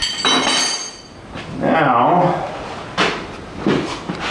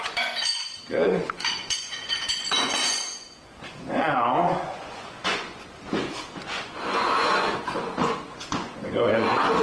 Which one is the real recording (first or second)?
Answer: first